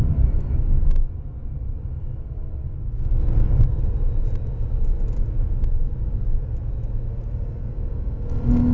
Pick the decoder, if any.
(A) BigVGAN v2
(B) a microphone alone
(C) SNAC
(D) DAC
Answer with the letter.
B